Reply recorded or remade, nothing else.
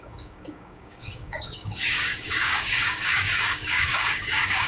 remade